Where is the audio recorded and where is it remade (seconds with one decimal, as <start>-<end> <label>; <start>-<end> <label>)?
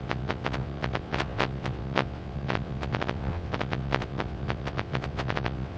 0.0-5.8 remade